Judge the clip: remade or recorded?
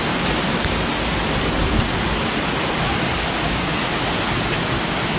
recorded